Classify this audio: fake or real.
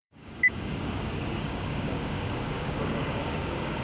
fake